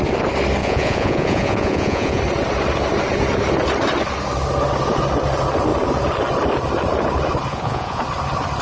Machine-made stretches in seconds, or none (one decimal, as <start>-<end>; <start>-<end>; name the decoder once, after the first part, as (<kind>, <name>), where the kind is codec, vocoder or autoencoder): 0.6-2.2 (vocoder, Vocos); 7.5-8.0